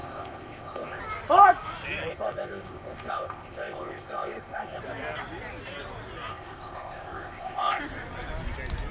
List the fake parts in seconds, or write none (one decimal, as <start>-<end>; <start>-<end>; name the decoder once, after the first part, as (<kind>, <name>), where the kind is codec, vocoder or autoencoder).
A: 0.0-1.0 (codec, ZipCodec); 2.1-4.8; 6.3-7.8